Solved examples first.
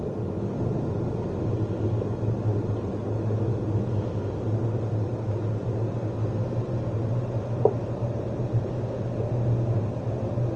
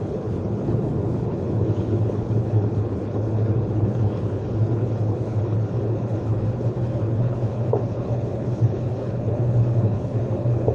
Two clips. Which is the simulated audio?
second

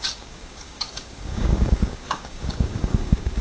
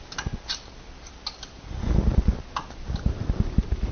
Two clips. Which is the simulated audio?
first